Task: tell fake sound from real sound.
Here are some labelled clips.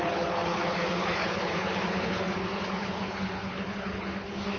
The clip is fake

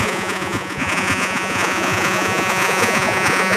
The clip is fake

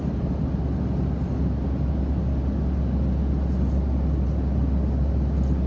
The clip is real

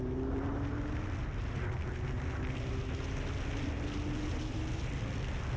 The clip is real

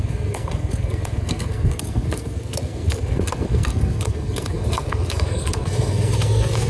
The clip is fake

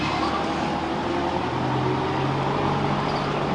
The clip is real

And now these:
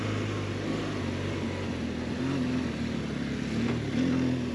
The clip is real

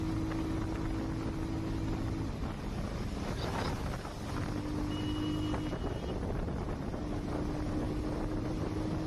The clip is real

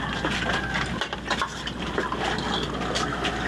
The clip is real